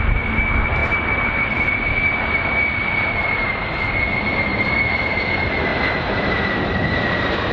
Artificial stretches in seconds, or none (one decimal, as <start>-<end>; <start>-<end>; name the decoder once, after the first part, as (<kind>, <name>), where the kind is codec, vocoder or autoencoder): 0.8-3.8 (vocoder, BigVGAN v2); 4.5-5.3; 5.7-7.5